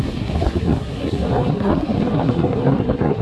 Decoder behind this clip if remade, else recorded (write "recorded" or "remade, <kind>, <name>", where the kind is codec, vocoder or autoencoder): remade, codec, SNAC